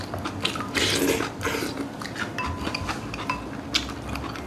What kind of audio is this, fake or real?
real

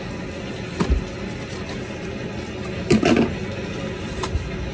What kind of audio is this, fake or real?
real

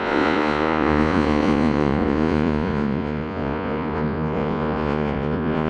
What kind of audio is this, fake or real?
fake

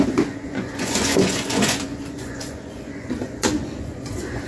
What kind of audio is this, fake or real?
fake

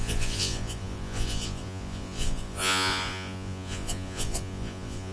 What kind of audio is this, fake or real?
fake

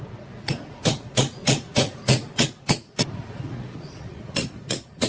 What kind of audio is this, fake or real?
fake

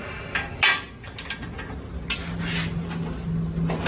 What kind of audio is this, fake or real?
real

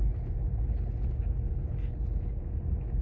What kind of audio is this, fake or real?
real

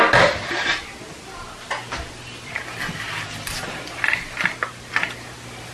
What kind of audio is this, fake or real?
real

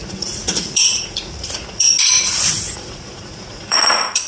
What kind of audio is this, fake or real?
fake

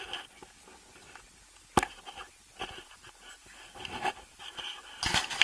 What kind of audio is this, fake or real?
real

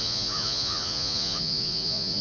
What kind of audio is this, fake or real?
fake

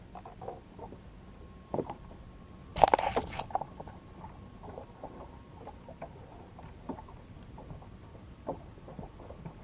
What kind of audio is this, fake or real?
real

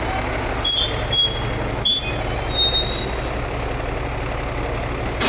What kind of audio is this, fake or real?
real